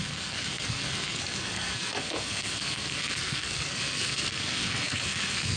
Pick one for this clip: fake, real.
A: fake